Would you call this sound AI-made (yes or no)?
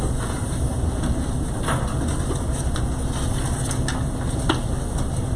no